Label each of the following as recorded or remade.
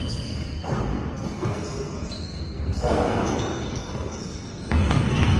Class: remade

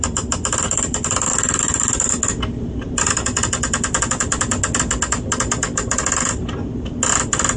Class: recorded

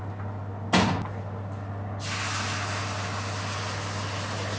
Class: recorded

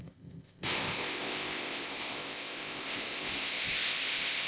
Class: remade